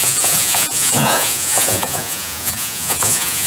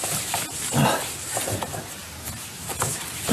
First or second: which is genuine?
second